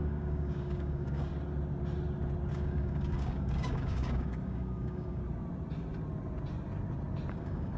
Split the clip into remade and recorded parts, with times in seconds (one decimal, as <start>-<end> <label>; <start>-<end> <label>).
0.0-1.3 remade; 1.3-2.5 recorded; 2.5-5.2 remade; 5.2-7.3 recorded; 7.3-7.8 remade